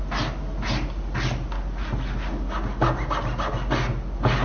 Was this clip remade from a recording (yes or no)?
no